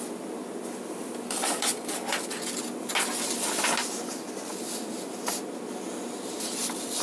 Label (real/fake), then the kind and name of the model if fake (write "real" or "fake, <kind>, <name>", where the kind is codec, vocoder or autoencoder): real